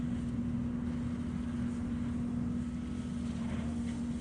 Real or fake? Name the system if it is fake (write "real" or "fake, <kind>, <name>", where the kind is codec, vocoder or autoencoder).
real